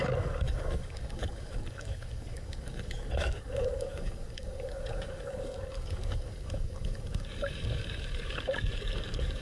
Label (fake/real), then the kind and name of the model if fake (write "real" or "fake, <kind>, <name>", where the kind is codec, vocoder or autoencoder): fake, codec, DAC